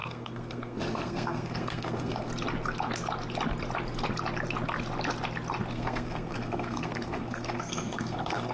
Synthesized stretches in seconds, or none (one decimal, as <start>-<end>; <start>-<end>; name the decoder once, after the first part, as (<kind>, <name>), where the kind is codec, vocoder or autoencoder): 0.0-2.3 (codec, SNAC); 5.7-8.5